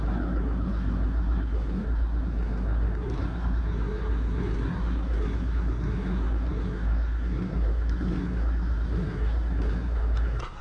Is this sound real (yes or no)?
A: no